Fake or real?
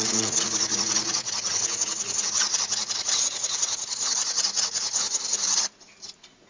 fake